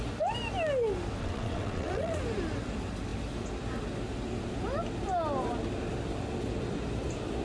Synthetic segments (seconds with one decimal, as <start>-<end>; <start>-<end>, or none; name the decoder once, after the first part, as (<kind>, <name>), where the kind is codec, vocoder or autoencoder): 1.2-2.2 (vocoder, WaveNeXt)